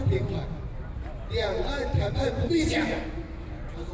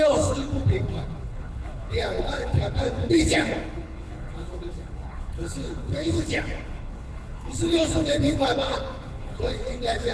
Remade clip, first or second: second